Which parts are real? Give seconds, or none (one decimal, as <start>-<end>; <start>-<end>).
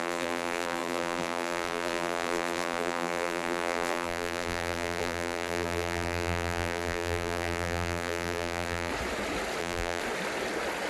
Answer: 8.9-9.6; 10.0-10.9